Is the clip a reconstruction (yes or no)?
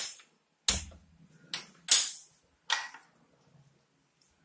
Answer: no